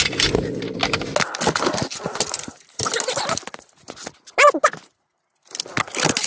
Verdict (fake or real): real